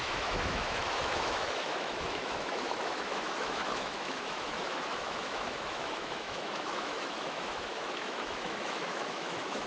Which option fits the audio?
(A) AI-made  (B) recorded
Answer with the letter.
A